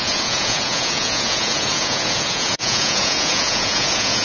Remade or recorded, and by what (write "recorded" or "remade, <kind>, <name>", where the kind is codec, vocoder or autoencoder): remade, vocoder, Vocos